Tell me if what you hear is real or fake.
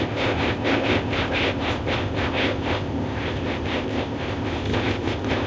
fake